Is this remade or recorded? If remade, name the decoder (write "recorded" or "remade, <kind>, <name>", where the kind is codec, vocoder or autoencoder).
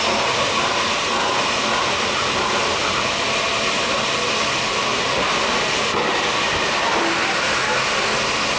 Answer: recorded